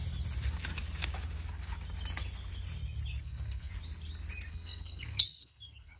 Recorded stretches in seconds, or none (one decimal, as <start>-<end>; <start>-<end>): 0.0-3.2; 3.7-4.5